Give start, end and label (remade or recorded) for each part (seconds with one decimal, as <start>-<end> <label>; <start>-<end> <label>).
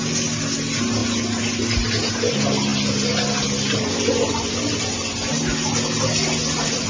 0.0-6.9 recorded